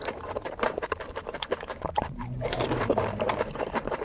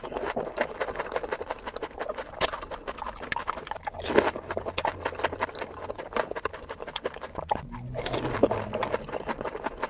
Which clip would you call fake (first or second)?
first